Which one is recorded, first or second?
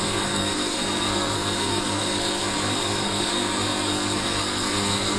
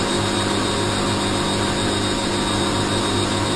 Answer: second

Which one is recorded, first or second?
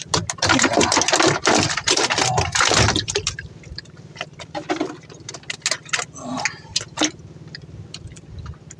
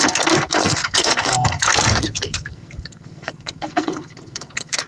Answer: first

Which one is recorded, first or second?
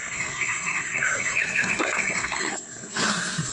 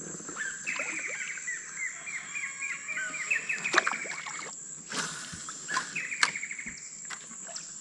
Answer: second